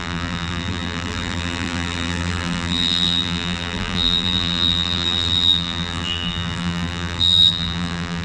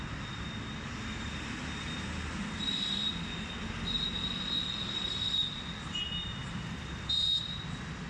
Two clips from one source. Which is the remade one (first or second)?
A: first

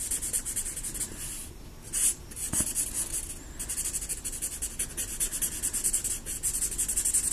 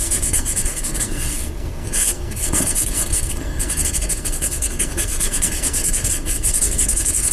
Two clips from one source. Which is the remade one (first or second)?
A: second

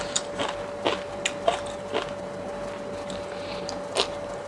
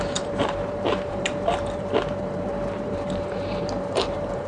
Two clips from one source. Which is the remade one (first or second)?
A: second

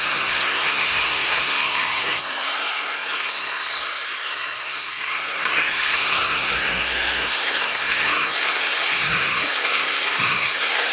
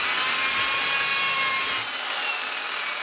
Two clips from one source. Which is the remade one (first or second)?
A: first